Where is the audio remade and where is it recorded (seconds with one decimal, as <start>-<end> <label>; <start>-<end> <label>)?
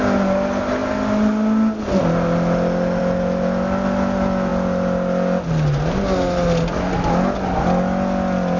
0.0-8.6 recorded